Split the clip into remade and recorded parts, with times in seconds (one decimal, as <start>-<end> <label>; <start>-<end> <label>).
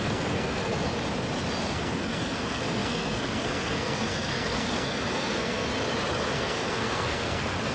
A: 0.0-0.7 remade; 0.7-1.6 recorded; 1.6-5.7 remade; 5.7-6.3 recorded; 6.3-7.7 remade